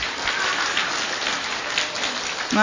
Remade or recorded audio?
recorded